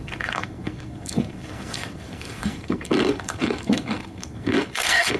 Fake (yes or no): yes